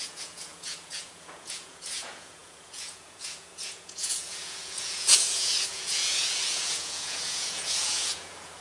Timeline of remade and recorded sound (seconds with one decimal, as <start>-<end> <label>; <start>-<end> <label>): 0.0-8.6 remade